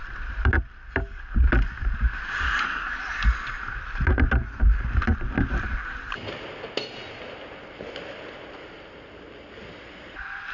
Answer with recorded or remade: recorded